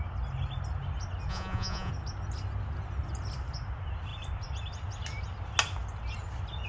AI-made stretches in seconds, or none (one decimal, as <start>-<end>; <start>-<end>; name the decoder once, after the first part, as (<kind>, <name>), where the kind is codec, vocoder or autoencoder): 1.3-1.9 (vocoder, Vocos)